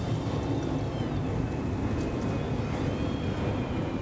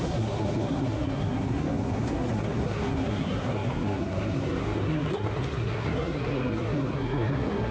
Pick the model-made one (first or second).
second